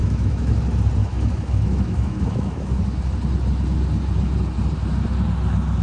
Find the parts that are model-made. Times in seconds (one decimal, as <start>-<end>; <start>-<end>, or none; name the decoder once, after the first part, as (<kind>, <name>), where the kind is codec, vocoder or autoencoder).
0.0-0.6 (autoencoder, DAC-VAE); 1.0-2.8